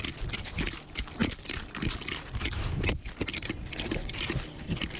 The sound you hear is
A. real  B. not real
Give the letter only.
A